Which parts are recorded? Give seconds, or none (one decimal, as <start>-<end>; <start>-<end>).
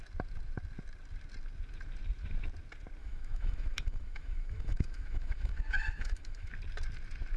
0.0-3.0; 6.5-7.4